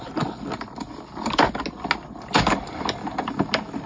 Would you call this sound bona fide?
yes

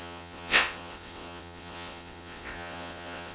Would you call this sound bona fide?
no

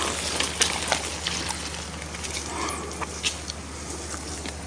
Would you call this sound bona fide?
yes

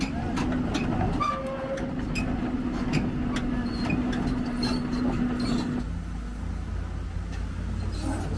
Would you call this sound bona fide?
yes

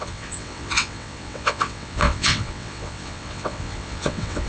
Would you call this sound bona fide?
no